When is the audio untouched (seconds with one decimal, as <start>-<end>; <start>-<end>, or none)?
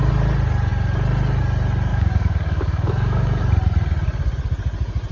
0.0-1.9; 3.4-5.1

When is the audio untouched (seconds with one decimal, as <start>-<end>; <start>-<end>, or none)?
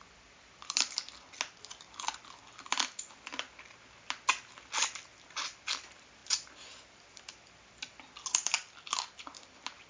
0.0-9.9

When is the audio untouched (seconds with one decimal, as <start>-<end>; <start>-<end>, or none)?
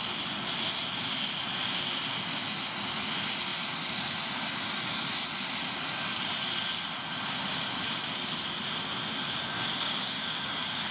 0.0-9.5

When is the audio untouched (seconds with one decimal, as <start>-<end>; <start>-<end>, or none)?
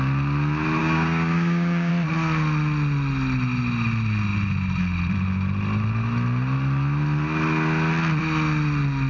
0.0-0.8; 1.9-9.1